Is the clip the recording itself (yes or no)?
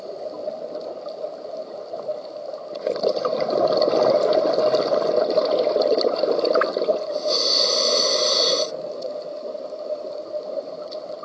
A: yes